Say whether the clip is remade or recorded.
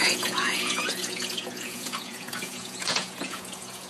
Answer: remade